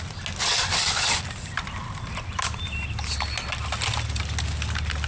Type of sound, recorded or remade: recorded